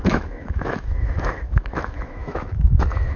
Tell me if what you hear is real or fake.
fake